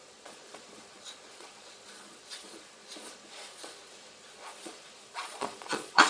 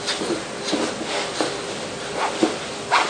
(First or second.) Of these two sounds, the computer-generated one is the first